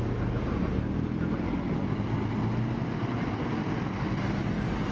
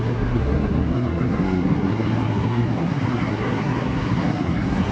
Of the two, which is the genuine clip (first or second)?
first